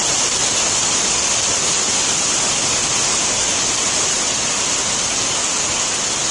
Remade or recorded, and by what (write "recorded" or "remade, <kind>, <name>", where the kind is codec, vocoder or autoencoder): recorded